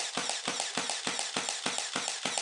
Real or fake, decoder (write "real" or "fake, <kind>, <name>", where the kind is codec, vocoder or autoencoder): real